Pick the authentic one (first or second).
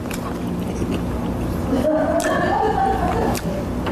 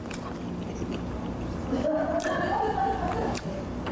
first